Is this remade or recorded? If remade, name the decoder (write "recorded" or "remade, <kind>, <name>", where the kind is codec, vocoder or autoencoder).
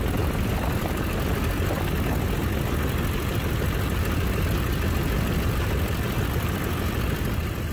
recorded